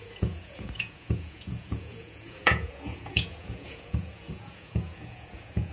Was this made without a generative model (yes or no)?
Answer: no